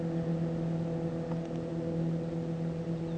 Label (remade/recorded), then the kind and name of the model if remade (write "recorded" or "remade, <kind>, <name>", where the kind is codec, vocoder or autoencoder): recorded